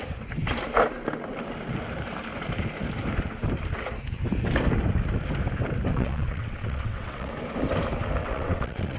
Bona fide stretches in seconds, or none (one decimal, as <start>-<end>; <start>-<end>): 0.0-5.9; 7.3-8.2

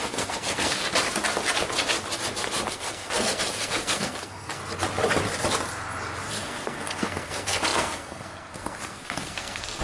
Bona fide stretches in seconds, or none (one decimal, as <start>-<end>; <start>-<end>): 0.8-2.7; 4.6-6.3